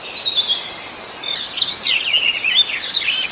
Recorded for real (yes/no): yes